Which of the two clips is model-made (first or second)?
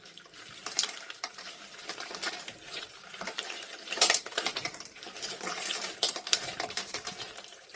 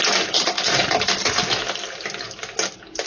first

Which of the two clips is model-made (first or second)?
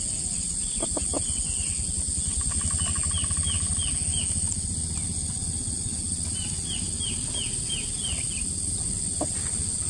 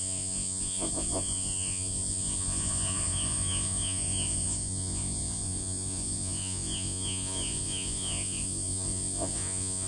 second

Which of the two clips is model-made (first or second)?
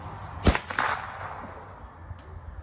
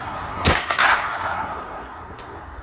second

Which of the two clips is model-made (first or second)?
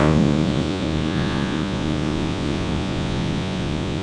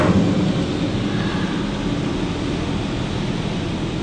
first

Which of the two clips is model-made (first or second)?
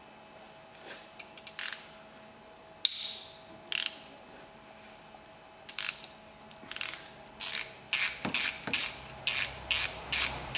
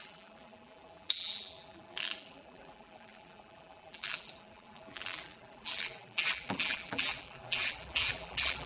second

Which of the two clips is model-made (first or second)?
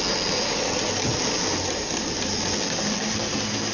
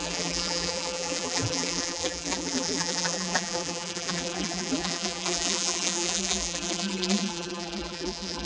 second